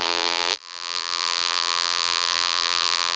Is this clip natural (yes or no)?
no